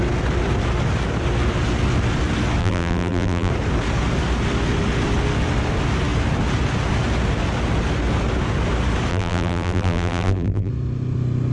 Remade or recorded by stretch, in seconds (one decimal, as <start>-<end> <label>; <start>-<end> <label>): 0.0-2.6 recorded; 2.6-3.5 remade; 3.5-9.1 recorded; 9.1-10.7 remade; 10.7-11.5 recorded

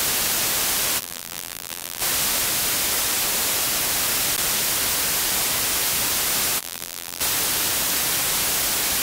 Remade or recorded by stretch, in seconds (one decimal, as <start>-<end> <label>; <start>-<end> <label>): 0.0-1.0 recorded; 1.0-2.0 remade; 2.0-6.6 recorded; 6.6-7.2 remade; 7.2-9.0 recorded

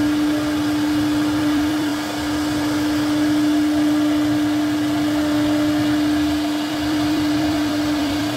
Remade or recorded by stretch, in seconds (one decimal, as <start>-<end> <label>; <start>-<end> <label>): 0.0-1.4 recorded; 1.4-1.9 remade; 1.9-6.7 recorded; 6.7-8.4 remade

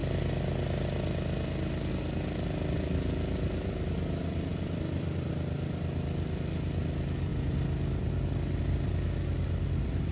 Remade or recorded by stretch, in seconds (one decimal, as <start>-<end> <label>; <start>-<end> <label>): 0.0-1.9 recorded; 1.9-7.3 remade; 7.3-9.6 recorded; 9.6-10.1 remade

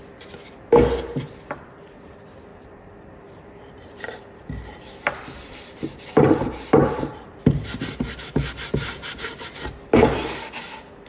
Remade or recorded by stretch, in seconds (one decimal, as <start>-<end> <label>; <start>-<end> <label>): 0.0-2.5 recorded; 2.5-7.4 remade; 7.4-11.1 recorded

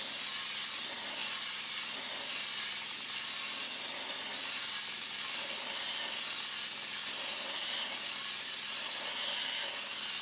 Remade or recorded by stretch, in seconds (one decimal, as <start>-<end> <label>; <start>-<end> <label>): 0.0-1.2 recorded; 1.2-6.4 remade; 6.4-7.0 recorded; 7.0-8.9 remade; 8.9-10.2 recorded

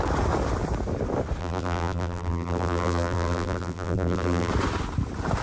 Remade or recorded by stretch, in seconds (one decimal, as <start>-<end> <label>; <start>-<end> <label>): 0.0-1.4 recorded; 1.4-4.5 remade; 4.5-5.4 recorded